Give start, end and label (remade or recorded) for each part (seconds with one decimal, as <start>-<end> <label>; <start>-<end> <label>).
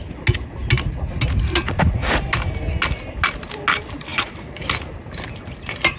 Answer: 0.0-6.0 recorded